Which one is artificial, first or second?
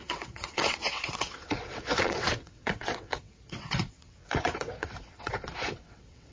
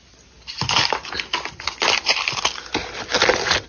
first